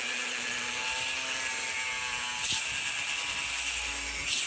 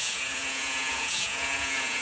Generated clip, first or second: second